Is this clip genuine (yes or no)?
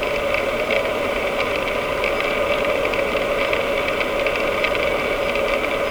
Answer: yes